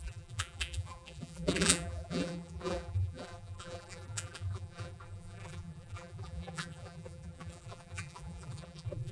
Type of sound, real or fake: fake